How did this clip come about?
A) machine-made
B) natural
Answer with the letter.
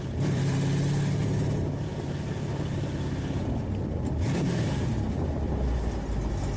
B